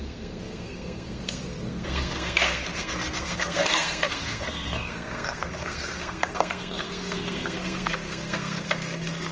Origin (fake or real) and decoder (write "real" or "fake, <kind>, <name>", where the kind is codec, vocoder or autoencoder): fake, codec, SNAC